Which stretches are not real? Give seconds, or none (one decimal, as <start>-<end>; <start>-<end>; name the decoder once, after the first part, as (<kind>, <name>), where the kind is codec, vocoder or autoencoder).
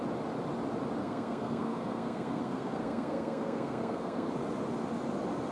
1.0-4.3 (codec, SNAC)